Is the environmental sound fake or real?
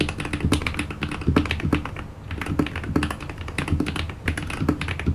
real